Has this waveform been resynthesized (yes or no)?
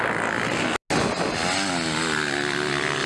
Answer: no